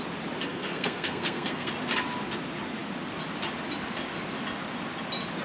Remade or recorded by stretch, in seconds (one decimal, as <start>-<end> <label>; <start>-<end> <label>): 0.0-0.5 recorded; 0.5-1.7 remade; 1.7-5.4 recorded